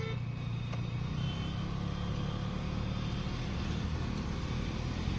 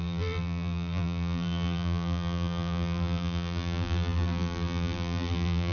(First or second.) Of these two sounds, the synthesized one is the second